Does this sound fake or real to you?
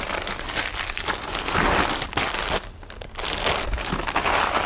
real